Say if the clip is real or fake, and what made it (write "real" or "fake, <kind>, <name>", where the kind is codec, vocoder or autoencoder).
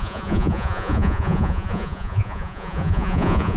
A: fake, vocoder, Vocos